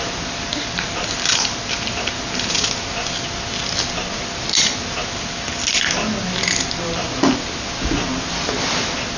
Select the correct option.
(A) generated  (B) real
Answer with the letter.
B